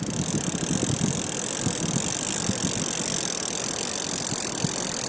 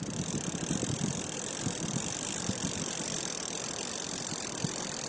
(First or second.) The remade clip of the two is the second